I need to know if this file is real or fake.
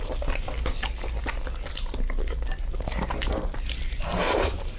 real